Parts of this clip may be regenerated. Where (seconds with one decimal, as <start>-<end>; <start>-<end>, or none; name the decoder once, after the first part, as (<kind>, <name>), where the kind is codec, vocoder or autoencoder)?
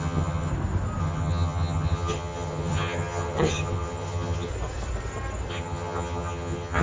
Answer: 0.0-0.5 (vocoder, HiFi-GAN); 1.0-4.5; 5.5-6.8